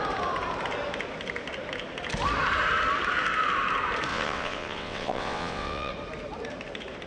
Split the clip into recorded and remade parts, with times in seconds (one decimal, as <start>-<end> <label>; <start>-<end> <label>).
0.0-4.1 recorded; 4.1-5.9 remade; 5.9-7.1 recorded